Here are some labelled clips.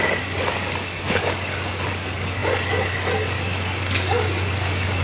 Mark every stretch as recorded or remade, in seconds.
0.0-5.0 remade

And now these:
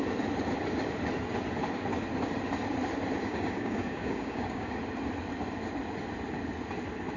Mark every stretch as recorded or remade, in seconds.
0.0-3.2 recorded; 3.2-4.8 remade; 4.8-7.2 recorded

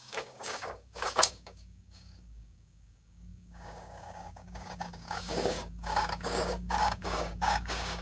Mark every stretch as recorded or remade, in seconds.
0.0-8.0 remade

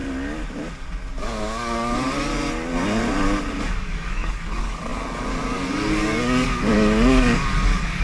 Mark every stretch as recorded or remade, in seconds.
0.0-1.2 recorded; 1.2-2.3 remade; 2.3-3.6 recorded; 3.6-8.0 remade